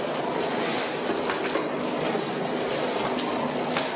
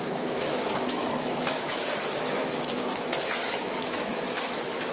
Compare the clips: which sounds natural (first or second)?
first